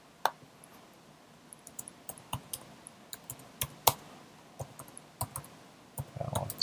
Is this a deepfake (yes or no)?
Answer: no